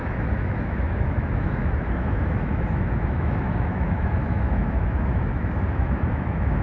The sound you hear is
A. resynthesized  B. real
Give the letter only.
A